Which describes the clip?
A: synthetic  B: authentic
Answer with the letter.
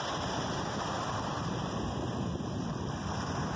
B